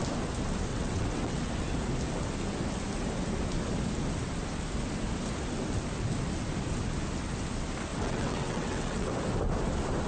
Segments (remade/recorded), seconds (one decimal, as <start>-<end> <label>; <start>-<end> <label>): 0.0-0.7 recorded; 0.7-1.5 remade; 1.5-7.9 recorded; 7.9-9.1 remade; 9.1-10.1 recorded